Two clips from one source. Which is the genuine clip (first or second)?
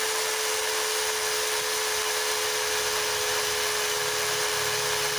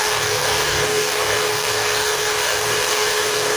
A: first